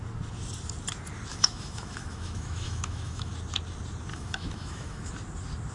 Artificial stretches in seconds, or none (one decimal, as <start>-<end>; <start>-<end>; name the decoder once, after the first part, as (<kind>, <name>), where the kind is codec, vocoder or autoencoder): 1.3-3.3 (autoencoder, DAC-VAE); 4.1-5.1